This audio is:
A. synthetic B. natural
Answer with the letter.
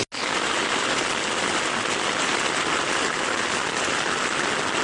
B